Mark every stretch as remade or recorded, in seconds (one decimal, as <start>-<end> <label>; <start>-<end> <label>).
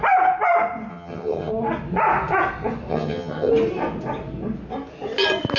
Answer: 0.0-0.9 recorded; 0.9-1.5 remade; 1.5-2.9 recorded; 2.9-3.5 remade; 3.5-5.6 recorded